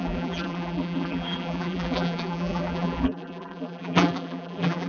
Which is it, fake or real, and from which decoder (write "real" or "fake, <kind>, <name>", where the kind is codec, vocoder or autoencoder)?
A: fake, vocoder, BigVGAN v2